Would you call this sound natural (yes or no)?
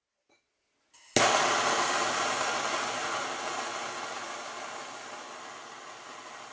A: yes